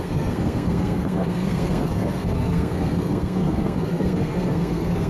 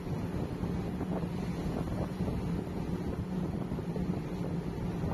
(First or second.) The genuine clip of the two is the second